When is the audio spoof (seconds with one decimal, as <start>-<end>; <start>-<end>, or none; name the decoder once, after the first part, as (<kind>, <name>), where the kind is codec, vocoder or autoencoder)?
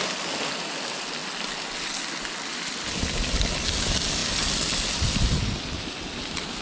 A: none